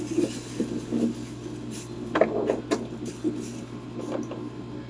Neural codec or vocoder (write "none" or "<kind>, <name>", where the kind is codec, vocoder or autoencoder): none